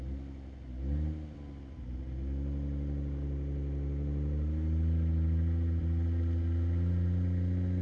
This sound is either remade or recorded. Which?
recorded